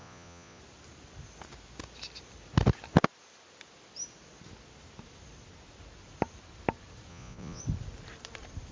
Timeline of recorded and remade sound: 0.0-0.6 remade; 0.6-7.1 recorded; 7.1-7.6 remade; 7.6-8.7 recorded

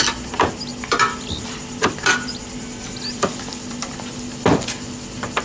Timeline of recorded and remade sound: 0.0-0.7 recorded; 0.7-3.9 remade; 3.9-5.4 recorded

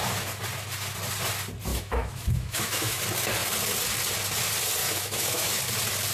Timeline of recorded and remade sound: 0.0-1.7 recorded; 1.7-3.0 remade; 3.0-4.8 recorded; 4.8-5.6 remade; 5.6-6.1 recorded

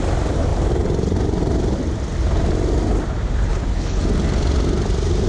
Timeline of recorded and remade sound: 0.0-3.5 recorded; 3.5-4.0 remade; 4.0-5.3 recorded

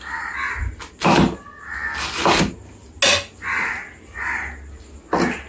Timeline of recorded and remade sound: 0.0-5.5 recorded